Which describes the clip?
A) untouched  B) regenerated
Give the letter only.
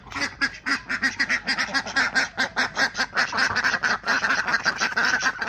A